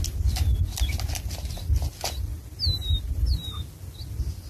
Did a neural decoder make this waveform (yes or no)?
no